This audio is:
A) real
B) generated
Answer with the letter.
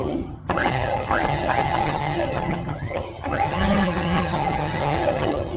B